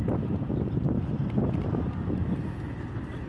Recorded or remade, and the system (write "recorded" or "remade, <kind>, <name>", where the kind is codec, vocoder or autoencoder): recorded